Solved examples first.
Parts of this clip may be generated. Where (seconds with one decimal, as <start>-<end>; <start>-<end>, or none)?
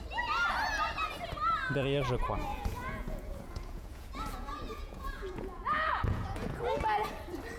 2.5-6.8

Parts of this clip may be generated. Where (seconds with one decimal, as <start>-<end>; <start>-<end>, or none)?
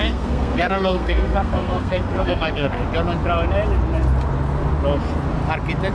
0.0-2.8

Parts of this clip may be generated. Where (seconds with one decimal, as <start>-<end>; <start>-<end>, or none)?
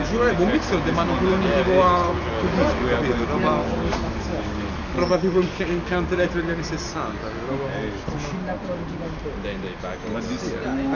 3.6-6.3